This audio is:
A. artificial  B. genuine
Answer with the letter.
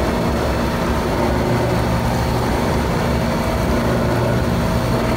B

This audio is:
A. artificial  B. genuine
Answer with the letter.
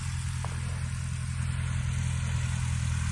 B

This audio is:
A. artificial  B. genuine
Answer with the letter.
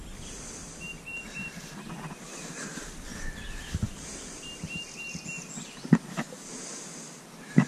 B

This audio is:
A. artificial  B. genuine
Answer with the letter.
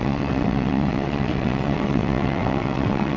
A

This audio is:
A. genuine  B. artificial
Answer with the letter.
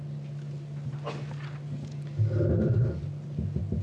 A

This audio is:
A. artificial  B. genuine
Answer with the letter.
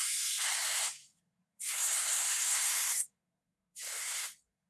A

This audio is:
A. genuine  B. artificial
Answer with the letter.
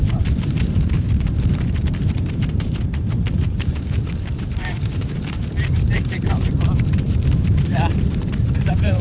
B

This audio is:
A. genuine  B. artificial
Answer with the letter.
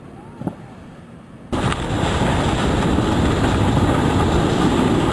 A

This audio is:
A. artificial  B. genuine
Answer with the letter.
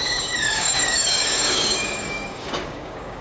A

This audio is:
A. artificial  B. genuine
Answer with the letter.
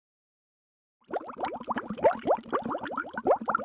B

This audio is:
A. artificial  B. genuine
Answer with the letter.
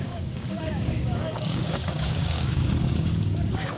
A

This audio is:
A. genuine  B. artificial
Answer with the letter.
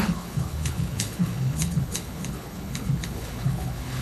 B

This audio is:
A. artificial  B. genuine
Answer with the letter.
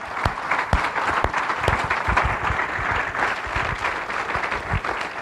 B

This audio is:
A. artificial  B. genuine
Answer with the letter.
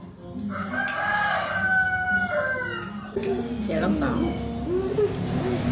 B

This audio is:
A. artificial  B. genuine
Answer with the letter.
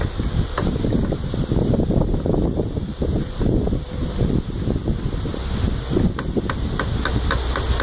B